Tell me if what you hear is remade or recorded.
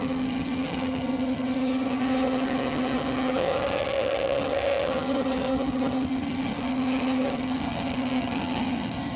remade